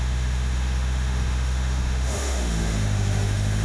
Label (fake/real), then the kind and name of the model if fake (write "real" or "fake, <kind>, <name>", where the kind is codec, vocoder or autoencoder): fake, autoencoder, DAC-VAE